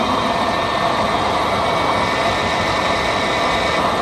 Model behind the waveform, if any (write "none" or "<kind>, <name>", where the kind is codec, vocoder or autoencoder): none